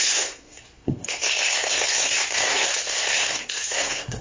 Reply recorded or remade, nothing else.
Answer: remade